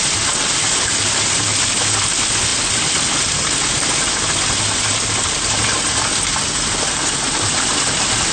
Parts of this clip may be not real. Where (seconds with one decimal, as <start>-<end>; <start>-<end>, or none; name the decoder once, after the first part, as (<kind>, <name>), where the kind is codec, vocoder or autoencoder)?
none